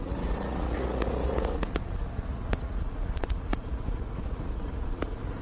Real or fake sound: fake